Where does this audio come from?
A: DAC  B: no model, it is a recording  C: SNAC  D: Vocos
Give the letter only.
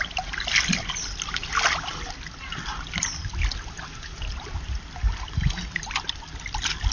B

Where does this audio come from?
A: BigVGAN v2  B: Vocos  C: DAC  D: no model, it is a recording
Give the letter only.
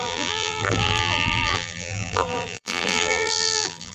A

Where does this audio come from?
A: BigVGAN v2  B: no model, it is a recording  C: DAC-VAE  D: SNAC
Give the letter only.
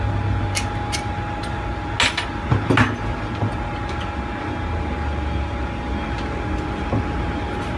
B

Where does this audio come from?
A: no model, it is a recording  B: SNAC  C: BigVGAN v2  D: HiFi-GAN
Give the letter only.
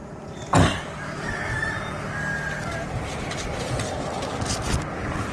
A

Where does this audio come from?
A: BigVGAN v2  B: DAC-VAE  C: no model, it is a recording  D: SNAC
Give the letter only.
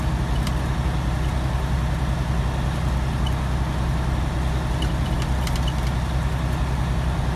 C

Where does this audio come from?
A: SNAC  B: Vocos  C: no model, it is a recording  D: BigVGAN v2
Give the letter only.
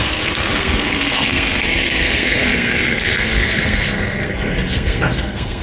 A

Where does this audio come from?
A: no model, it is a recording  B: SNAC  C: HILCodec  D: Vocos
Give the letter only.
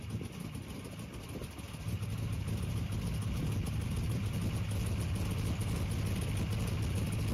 A